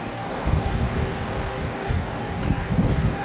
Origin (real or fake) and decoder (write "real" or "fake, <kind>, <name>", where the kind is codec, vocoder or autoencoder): fake, codec, DAC